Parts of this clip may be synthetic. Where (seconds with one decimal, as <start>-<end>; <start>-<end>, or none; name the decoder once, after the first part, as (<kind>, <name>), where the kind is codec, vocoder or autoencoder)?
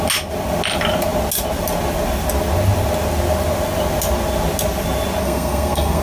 5.2-6.0 (codec, SNAC)